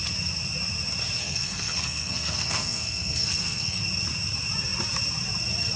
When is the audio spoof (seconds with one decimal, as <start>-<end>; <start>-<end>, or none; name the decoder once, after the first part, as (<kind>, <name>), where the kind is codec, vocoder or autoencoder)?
1.2-3.8 (codec, SNAC)